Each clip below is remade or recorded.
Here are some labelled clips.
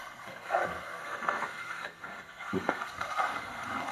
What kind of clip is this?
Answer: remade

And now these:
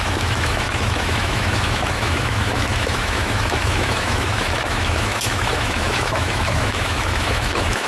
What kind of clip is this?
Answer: remade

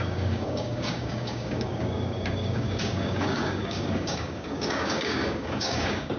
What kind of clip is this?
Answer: remade